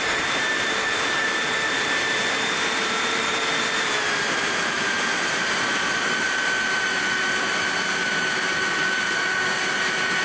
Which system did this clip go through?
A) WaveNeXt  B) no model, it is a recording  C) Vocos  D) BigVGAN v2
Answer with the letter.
D